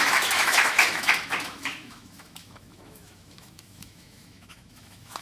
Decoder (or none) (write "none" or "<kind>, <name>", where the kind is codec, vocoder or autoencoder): autoencoder, DAC-VAE